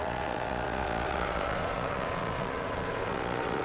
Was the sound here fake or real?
fake